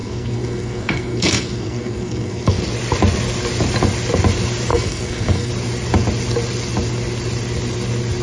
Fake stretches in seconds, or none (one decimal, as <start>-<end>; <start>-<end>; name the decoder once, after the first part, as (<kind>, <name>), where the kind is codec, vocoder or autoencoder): 0.0-2.6 (codec, SNAC); 4.7-5.5